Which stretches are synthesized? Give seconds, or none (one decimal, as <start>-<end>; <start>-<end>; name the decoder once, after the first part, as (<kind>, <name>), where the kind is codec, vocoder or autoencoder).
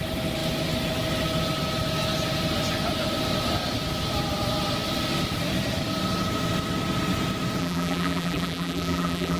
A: 7.6-9.4 (vocoder, BigVGAN v2)